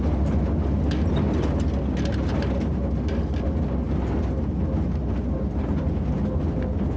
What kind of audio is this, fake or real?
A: real